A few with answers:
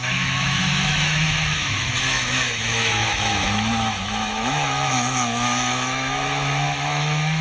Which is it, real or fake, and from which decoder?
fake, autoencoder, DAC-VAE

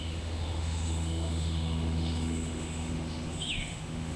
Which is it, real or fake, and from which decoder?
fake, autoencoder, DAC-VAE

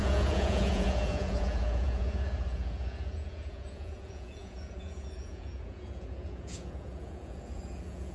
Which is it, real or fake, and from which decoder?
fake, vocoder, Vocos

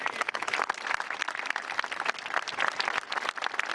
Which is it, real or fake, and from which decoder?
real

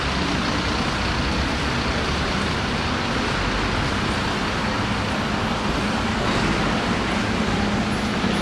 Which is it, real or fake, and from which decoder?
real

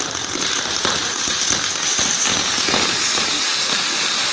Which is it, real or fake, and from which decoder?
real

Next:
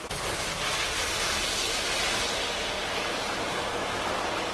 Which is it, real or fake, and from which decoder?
real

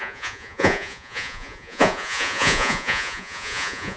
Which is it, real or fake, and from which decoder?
fake, vocoder, Vocos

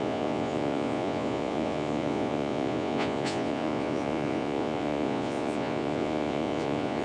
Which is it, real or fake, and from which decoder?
fake, vocoder, Vocos